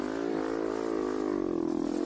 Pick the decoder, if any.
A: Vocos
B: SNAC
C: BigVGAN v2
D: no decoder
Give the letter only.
D